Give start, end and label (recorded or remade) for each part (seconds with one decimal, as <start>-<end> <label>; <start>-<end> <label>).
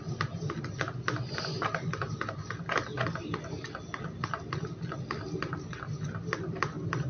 0.0-7.1 recorded